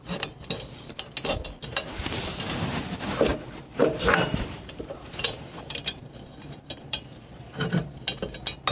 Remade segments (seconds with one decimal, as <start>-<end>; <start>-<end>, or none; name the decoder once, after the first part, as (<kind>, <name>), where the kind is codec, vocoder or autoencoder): 3.3-7.9 (vocoder, BigVGAN v2)

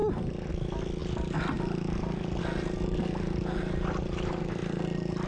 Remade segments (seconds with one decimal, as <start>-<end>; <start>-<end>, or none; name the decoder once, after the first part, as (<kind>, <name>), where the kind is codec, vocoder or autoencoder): none

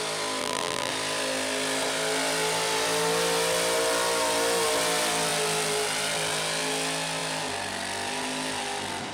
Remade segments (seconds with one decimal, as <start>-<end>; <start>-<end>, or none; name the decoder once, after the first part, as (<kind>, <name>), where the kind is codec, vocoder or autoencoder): 0.4-0.9 (vocoder, BigVGAN v2)

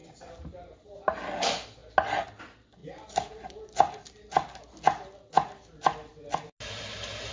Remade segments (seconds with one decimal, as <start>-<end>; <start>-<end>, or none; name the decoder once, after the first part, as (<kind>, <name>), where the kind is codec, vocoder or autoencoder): 0.0-0.9 (vocoder, BigVGAN v2); 2.8-4.0